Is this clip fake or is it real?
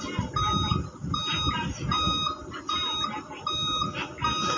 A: real